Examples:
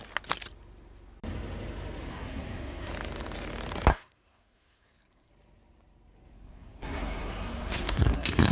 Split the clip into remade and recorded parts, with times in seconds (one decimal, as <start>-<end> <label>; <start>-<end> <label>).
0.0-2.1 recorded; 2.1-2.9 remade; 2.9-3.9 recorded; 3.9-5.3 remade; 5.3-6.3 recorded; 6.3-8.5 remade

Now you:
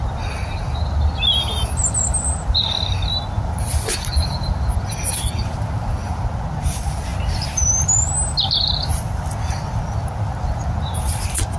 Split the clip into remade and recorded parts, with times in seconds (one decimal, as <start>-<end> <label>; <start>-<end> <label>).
0.0-7.1 recorded; 7.1-9.0 remade; 9.0-11.6 recorded

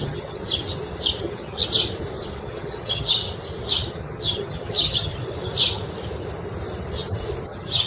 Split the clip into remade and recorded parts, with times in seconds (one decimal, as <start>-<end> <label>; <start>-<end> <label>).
0.0-0.4 remade; 0.4-1.2 recorded; 1.2-1.6 remade; 1.6-2.4 recorded; 2.4-3.2 remade; 3.2-3.9 recorded; 3.9-5.2 remade; 5.2-7.4 recorded; 7.4-7.9 remade

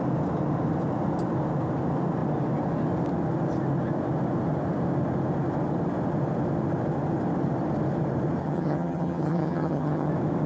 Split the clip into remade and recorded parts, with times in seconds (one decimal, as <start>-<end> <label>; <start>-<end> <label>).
0.0-8.4 recorded; 8.4-10.1 remade; 10.1-10.5 recorded

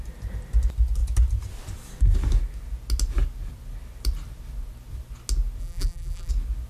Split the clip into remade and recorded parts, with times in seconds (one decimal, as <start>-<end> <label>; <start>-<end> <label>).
0.0-5.6 recorded; 5.6-6.3 remade; 6.3-6.7 recorded

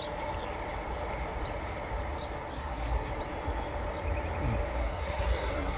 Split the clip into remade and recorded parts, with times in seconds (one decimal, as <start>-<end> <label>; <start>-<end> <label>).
0.0-2.5 recorded; 2.5-3.1 remade; 3.1-4.8 recorded; 4.8-5.8 remade

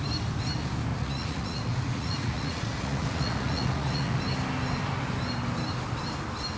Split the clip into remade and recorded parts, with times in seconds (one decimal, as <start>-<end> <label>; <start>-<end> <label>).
0.0-0.9 recorded; 0.9-4.2 remade; 4.2-6.6 recorded

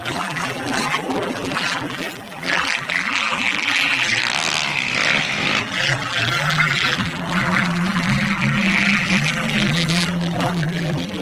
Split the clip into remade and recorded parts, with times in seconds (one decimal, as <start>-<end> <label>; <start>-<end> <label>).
0.0-4.2 remade; 4.2-5.6 recorded; 5.6-11.2 remade